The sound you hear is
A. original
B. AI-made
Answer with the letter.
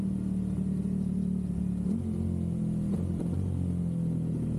A